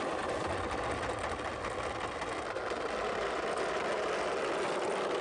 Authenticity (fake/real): real